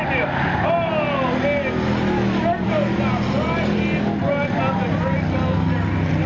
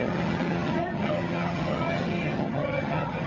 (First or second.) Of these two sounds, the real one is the first